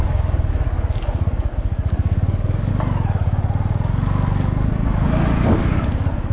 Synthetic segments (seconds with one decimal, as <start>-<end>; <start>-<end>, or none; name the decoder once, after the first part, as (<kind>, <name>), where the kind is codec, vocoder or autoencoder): 0.0-2.7 (codec, DAC); 5.6-6.3